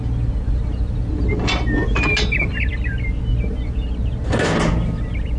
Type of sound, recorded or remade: recorded